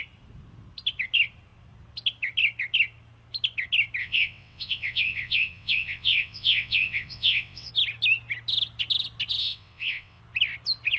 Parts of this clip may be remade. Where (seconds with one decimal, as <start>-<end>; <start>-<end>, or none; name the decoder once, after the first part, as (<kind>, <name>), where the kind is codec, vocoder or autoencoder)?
4.0-7.7 (vocoder, WaveNeXt); 9.4-10.2